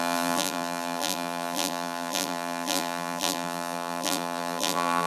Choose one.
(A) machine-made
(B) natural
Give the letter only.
A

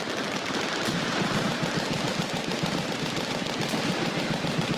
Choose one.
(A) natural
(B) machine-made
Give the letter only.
A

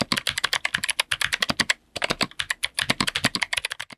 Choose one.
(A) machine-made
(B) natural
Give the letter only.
B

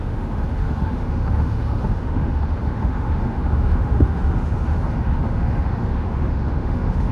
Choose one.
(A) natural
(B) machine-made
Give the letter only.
B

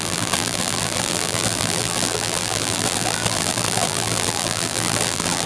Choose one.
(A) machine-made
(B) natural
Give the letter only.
A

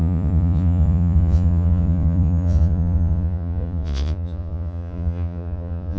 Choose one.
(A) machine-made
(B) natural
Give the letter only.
A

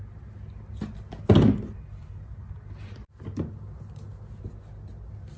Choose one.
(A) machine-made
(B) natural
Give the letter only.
B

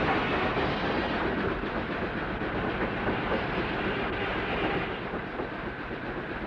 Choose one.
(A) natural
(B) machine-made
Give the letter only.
A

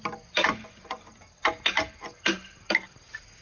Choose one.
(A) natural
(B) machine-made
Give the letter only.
A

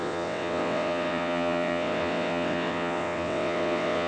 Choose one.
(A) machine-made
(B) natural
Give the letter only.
A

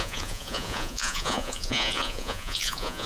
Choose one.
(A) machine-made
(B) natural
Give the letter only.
A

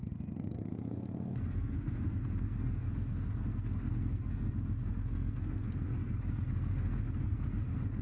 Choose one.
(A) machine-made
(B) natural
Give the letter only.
A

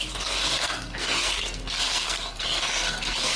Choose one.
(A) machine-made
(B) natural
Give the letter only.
A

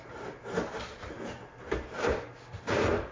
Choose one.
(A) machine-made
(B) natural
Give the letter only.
B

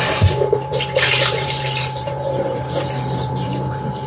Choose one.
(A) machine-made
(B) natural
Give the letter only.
A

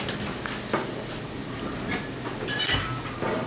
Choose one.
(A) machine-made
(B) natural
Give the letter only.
B